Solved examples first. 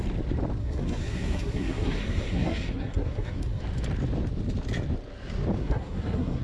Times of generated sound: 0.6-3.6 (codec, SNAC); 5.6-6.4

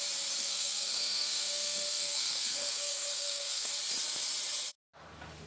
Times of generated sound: 0.4-3.7 (codec, SNAC)

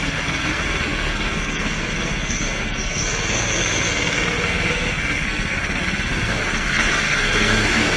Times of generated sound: 0.0-8.0 (codec, SNAC)

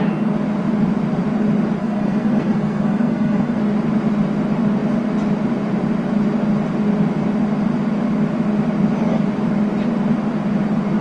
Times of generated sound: 1.8-3.6 (codec, SNAC)

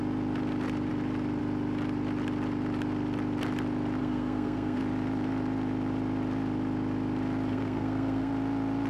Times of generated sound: 4.0-4.8 (codec, SNAC); 7.5-8.3

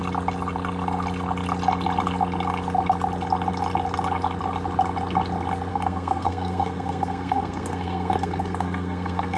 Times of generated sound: 5.7-9.4 (codec, SNAC)